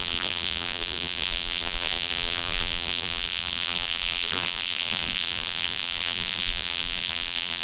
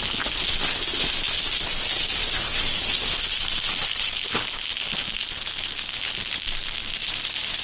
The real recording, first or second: second